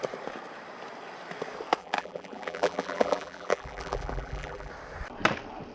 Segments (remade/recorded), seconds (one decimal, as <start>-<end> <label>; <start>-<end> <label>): 0.0-1.8 recorded; 1.8-4.7 remade; 4.7-5.7 recorded